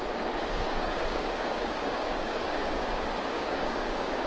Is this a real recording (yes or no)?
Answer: no